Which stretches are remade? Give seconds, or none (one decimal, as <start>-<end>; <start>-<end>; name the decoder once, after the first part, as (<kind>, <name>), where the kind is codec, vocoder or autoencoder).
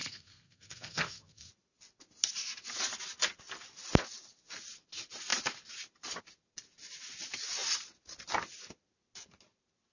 0.0-1.5 (codec, SNAC)